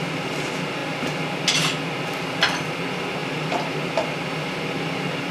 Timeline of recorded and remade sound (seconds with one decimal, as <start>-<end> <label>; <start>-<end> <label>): 0.0-3.2 recorded; 3.2-5.3 remade